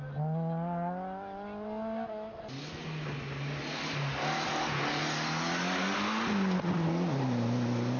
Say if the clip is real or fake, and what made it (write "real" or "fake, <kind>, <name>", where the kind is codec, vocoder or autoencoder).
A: real